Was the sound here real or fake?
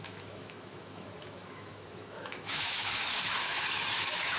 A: fake